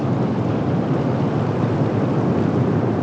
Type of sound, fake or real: real